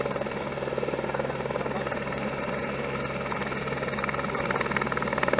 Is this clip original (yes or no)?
yes